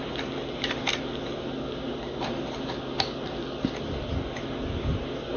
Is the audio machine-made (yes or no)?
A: no